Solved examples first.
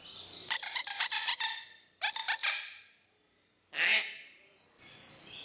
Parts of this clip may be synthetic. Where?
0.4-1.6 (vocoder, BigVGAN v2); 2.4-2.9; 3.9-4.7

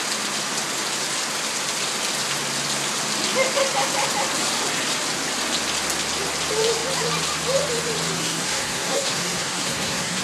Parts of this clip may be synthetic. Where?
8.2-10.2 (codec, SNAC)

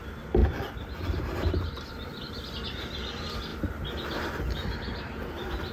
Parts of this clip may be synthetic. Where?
none